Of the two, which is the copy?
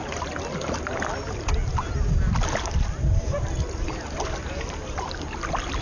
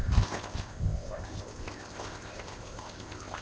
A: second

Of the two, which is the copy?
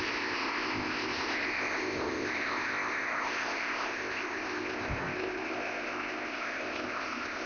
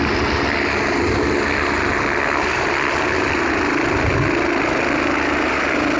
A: first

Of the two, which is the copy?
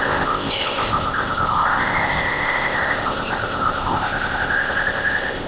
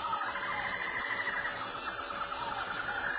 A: first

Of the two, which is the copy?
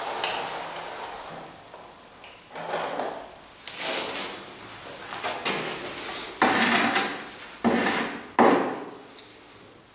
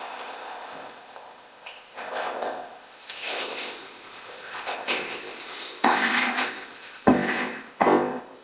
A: second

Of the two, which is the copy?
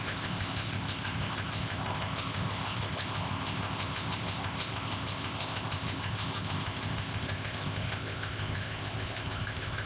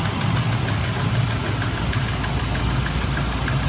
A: first